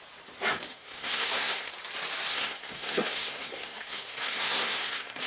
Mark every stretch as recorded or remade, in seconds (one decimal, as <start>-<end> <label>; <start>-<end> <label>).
0.0-0.7 recorded; 0.7-1.7 remade; 1.7-2.3 recorded; 2.3-5.3 remade